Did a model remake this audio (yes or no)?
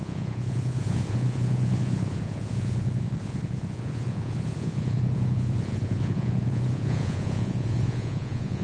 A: yes